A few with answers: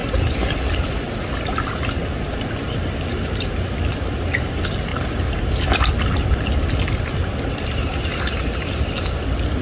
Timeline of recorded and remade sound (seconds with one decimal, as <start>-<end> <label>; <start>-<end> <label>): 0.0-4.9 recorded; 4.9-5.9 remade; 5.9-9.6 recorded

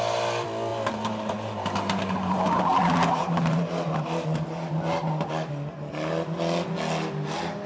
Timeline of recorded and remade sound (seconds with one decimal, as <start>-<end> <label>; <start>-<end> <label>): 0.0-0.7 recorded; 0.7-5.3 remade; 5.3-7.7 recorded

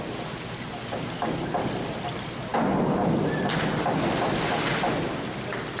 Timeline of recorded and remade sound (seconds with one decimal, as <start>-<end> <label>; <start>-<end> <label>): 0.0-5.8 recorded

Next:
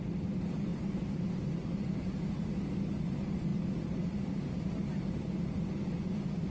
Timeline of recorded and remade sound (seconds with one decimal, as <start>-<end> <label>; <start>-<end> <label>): 0.0-0.7 recorded; 0.7-2.8 remade; 2.8-3.5 recorded; 3.5-6.5 remade